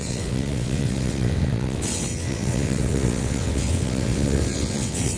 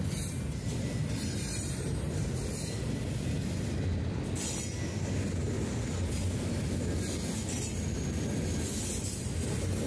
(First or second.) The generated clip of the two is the first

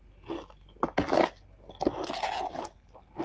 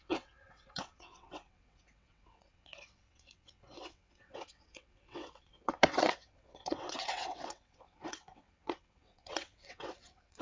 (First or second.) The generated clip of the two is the second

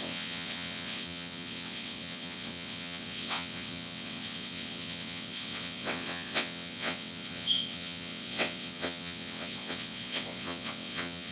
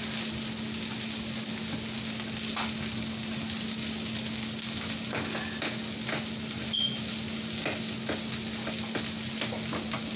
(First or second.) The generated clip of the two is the first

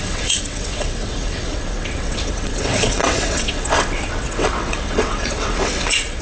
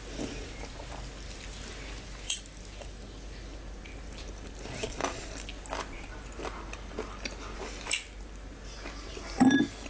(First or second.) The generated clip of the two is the first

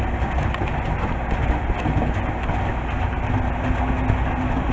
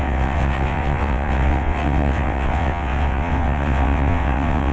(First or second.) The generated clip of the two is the second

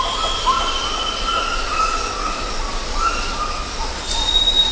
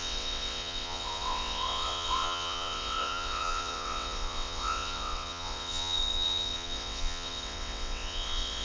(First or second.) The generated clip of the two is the second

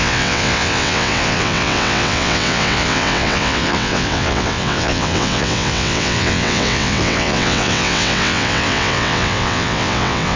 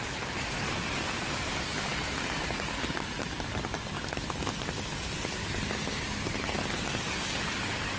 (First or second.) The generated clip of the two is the first